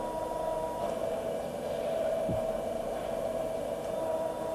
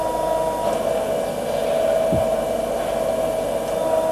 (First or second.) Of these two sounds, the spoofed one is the first